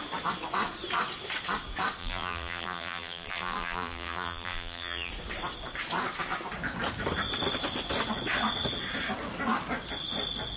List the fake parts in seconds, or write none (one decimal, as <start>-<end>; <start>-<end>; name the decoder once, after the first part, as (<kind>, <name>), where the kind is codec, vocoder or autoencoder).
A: 2.0-5.1 (vocoder, BigVGAN v2)